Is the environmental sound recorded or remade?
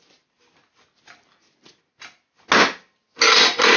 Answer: recorded